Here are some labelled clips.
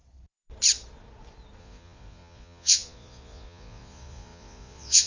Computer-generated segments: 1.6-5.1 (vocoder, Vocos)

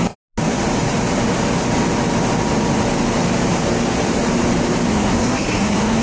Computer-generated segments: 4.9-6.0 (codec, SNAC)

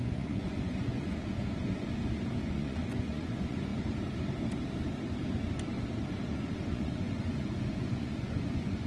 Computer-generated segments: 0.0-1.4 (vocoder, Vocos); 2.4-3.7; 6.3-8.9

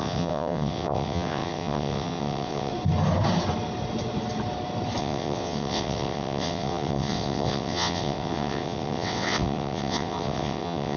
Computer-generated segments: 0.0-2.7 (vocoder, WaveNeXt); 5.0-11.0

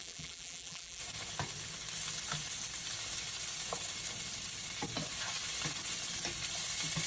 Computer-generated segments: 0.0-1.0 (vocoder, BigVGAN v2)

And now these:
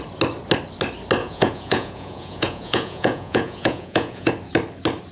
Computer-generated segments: 1.2-4.3 (vocoder, Vocos)